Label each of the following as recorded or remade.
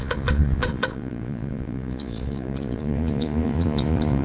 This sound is remade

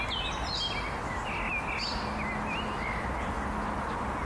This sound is recorded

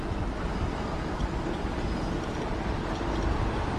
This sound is recorded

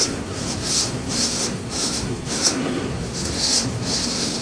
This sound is remade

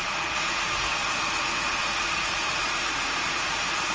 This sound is remade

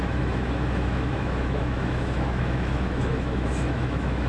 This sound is remade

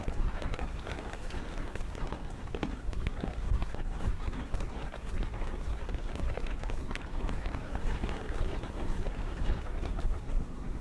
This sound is remade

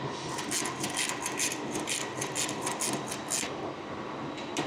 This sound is recorded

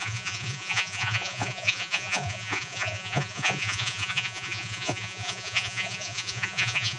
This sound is remade